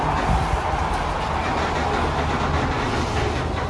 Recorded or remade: recorded